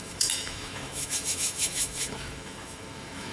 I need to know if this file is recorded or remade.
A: remade